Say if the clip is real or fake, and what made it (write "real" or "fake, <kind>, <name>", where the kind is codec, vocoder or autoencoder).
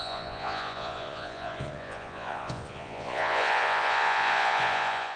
fake, vocoder, Vocos